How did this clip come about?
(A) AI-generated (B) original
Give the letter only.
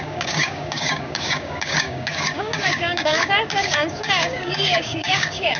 A